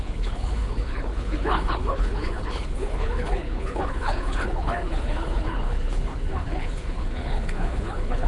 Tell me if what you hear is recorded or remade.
remade